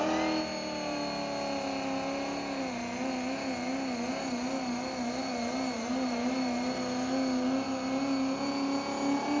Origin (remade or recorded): recorded